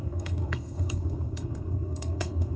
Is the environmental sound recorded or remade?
remade